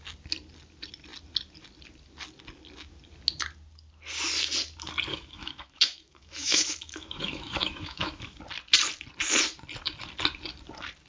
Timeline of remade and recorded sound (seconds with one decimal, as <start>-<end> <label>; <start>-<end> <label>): 0.0-5.1 recorded; 5.1-8.4 remade; 8.4-11.1 recorded